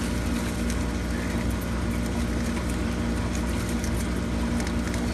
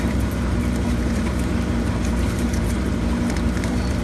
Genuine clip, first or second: first